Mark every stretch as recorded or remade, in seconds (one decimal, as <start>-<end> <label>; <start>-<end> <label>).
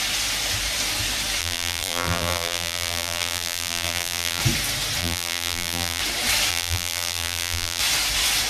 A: 0.0-1.4 recorded; 1.4-4.4 remade; 4.4-5.0 recorded; 5.0-6.0 remade; 6.0-6.5 recorded; 6.5-7.8 remade; 7.8-8.5 recorded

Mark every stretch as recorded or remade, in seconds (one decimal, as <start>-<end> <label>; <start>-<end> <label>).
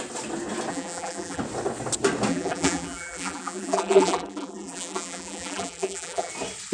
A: 0.0-0.7 recorded; 0.7-1.4 remade; 1.4-2.3 recorded; 2.3-6.3 remade; 6.3-6.7 recorded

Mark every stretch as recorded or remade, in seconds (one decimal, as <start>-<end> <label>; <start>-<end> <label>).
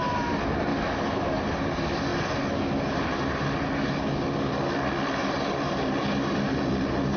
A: 0.0-0.7 remade; 0.7-1.4 recorded; 1.4-2.1 remade; 2.1-4.5 recorded; 4.5-7.2 remade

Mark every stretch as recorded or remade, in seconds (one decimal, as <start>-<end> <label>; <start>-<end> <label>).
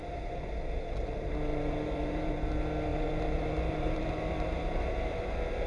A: 0.0-1.5 recorded; 1.5-2.5 remade; 2.5-2.9 recorded; 2.9-5.2 remade; 5.2-5.7 recorded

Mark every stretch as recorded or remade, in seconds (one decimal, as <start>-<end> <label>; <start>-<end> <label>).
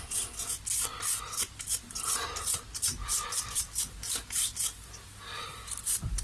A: 0.0-2.9 recorded; 2.9-6.2 remade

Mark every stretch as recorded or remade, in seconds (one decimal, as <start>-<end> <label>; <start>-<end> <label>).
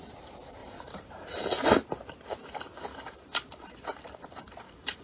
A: 0.0-0.6 recorded; 0.6-1.4 remade; 1.4-2.9 recorded; 2.9-5.0 remade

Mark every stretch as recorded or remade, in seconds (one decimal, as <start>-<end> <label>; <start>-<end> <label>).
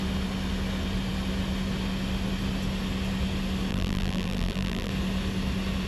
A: 0.0-3.7 recorded; 3.7-4.9 remade; 4.9-5.9 recorded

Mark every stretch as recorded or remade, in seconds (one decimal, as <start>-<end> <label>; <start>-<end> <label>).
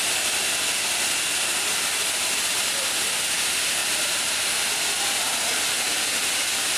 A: 0.0-3.8 recorded; 3.8-4.4 remade; 4.4-6.8 recorded